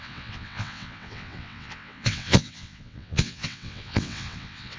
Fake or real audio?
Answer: fake